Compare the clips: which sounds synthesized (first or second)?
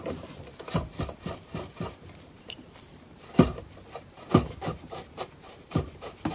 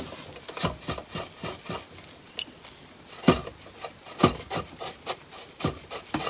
first